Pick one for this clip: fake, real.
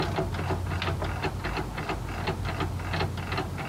real